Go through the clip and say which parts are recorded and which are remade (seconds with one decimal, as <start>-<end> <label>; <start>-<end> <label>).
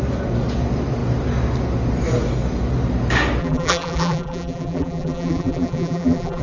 0.0-3.4 recorded; 3.4-6.4 remade